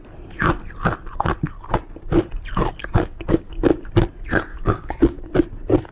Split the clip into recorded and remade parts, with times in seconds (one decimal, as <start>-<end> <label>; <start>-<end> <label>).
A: 0.0-2.8 recorded; 2.8-3.5 remade; 3.5-4.5 recorded; 4.5-5.3 remade; 5.3-5.9 recorded